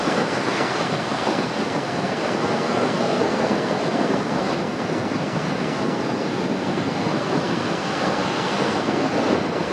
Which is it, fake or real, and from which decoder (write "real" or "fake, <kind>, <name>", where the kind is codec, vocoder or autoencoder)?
fake, codec, SNAC